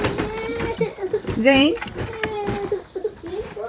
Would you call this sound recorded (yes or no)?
no